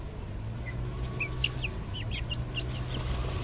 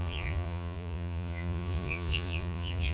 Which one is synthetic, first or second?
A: second